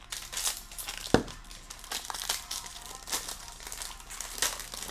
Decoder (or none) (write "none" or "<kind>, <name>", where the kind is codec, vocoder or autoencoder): none